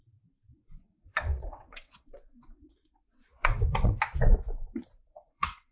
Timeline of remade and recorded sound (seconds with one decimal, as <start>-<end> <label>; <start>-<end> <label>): 0.0-0.6 recorded; 0.6-4.0 remade; 4.0-5.0 recorded; 5.0-5.7 remade